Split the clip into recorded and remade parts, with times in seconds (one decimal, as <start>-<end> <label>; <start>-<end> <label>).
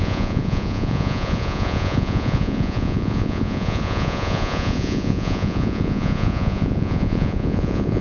0.0-8.0 remade